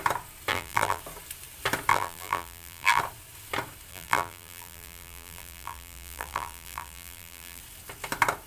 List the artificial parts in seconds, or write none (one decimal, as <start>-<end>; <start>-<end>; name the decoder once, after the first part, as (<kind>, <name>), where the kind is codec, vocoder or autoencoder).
0.5-1.0 (vocoder, BigVGAN v2); 1.9-3.0; 3.9-7.6